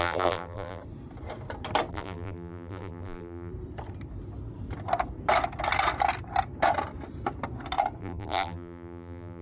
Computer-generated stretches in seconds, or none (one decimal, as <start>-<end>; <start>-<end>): 0.0-0.8; 1.9-3.5; 8.0-9.4